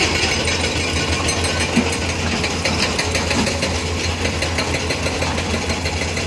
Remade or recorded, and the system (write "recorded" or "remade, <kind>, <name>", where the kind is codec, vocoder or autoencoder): recorded